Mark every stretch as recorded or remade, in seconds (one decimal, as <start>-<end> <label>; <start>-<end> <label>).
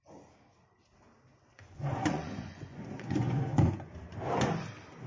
0.0-1.5 recorded; 1.5-3.9 remade; 3.9-5.1 recorded